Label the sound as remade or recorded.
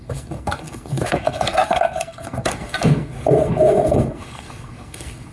remade